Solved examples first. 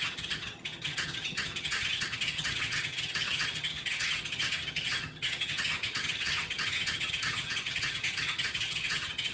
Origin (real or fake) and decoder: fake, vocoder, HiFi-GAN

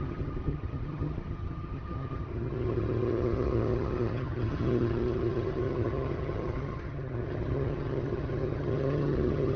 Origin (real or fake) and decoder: fake, vocoder, HiFi-GAN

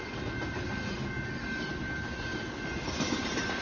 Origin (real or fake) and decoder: real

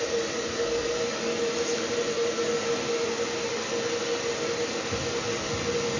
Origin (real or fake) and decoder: real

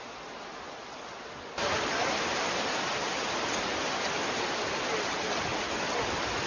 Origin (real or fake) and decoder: real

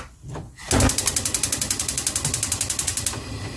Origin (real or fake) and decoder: real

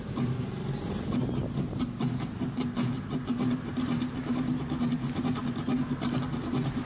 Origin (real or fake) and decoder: real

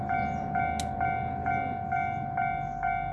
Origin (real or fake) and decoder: real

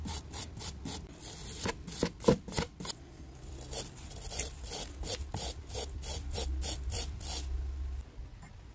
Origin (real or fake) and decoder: real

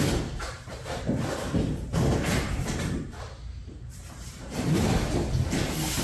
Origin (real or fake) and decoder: fake, vocoder, BigVGAN v2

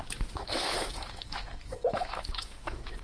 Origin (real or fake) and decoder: fake, autoencoder, DAC-VAE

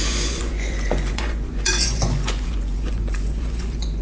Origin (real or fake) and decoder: fake, vocoder, Vocos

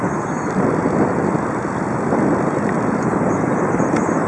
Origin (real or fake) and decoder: fake, vocoder, BigVGAN v2